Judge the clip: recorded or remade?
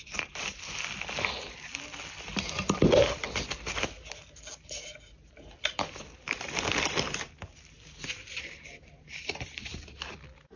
recorded